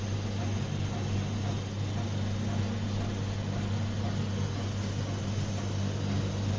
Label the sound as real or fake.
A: real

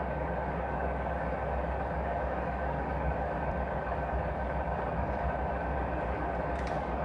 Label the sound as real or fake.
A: fake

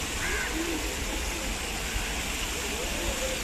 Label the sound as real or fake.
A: real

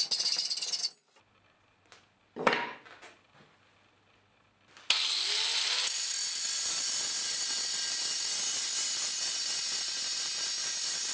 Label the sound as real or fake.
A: real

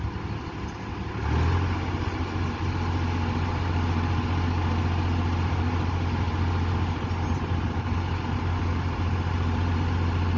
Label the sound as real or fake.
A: real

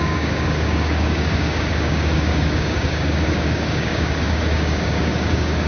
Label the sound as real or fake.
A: fake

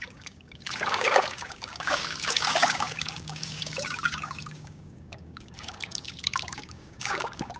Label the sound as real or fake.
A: fake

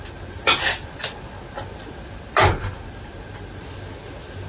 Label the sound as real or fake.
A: real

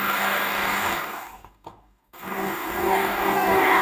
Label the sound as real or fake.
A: fake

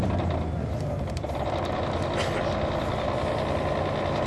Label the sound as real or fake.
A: real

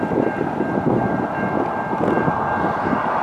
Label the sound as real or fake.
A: real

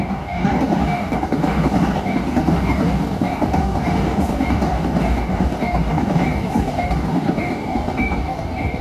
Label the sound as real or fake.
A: fake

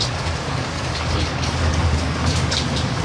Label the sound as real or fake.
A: fake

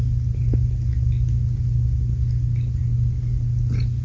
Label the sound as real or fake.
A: real